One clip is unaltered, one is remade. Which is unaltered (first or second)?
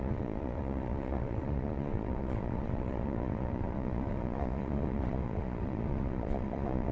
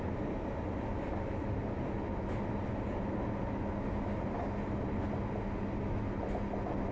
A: second